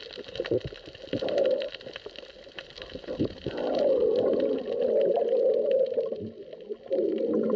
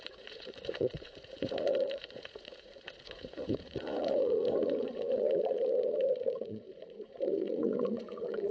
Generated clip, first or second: second